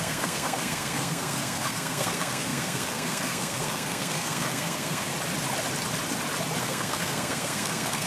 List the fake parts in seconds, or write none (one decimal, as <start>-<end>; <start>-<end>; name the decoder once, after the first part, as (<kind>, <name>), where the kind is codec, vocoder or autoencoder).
0.0-5.1 (codec, SNAC); 6.6-8.1